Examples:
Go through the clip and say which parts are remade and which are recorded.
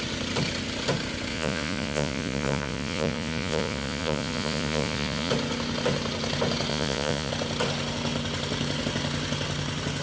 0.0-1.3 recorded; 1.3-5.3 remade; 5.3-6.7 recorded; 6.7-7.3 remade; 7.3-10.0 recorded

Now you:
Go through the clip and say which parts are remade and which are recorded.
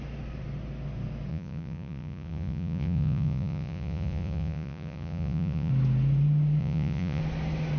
0.0-1.3 recorded; 1.3-5.7 remade; 5.7-6.6 recorded; 6.6-7.2 remade; 7.2-7.8 recorded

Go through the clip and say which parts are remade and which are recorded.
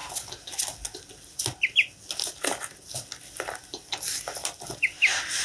0.0-5.4 recorded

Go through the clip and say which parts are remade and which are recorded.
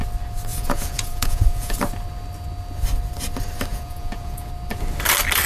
0.0-0.5 recorded; 0.5-1.8 remade; 1.8-3.7 recorded; 3.7-4.5 remade; 4.5-5.5 recorded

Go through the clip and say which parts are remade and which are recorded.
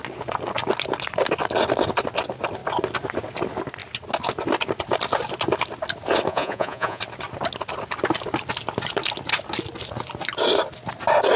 0.0-6.3 recorded; 6.3-7.0 remade; 7.0-11.4 recorded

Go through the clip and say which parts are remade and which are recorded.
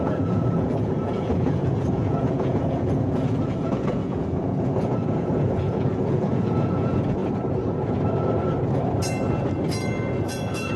0.0-7.2 remade; 7.2-10.2 recorded; 10.2-10.8 remade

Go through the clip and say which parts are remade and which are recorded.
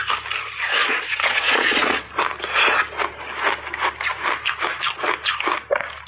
0.0-0.8 recorded; 0.8-2.1 remade; 2.1-6.1 recorded